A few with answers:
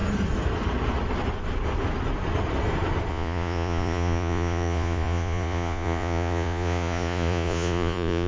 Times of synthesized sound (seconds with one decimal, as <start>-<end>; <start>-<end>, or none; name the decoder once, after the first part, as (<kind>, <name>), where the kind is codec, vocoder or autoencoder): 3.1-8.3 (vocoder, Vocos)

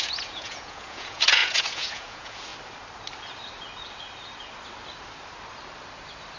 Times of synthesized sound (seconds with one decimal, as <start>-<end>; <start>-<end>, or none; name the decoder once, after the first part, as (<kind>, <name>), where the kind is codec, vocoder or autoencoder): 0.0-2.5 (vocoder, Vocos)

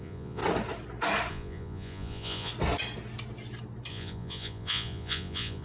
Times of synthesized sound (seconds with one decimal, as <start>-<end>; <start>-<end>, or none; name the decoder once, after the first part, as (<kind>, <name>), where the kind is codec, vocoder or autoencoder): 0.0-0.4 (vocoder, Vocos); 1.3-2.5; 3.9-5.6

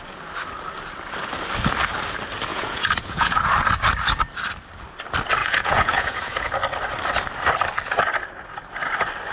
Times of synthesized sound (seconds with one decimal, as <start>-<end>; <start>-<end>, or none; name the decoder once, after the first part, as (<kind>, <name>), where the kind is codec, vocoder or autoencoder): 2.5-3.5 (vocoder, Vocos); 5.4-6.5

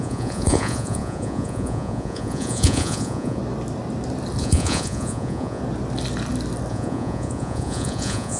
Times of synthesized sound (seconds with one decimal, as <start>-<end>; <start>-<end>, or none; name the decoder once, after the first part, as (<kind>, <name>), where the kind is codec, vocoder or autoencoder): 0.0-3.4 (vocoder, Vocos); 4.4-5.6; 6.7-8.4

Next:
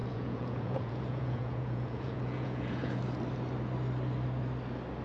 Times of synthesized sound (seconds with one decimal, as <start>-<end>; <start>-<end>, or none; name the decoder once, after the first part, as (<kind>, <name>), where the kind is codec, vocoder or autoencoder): 0.0-3.0 (vocoder, Vocos)